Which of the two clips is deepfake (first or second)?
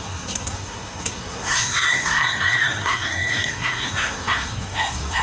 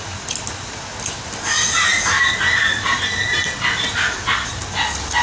first